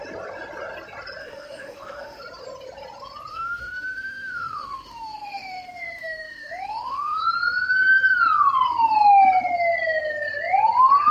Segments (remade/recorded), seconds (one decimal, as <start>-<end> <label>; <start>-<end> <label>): 0.0-1.2 recorded; 1.2-2.2 remade; 2.2-3.3 recorded; 3.3-7.2 remade; 7.2-11.1 recorded